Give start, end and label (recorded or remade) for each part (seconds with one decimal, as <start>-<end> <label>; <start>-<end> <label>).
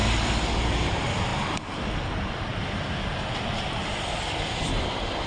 0.0-2.5 remade; 2.5-4.2 recorded; 4.2-5.3 remade